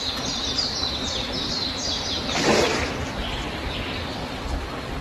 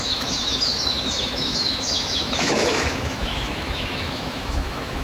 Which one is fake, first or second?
second